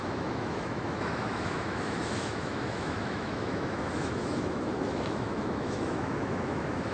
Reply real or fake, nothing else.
fake